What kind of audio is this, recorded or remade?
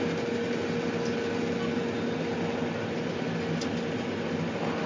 recorded